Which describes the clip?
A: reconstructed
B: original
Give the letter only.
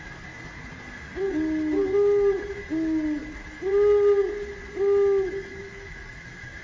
B